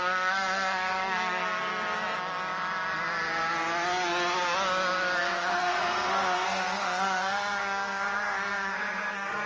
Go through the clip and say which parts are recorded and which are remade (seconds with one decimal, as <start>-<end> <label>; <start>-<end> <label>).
0.0-1.6 remade; 1.6-5.2 recorded; 5.2-9.5 remade